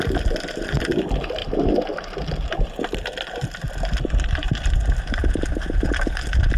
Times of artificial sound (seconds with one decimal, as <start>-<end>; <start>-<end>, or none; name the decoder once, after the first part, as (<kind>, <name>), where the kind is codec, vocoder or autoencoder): none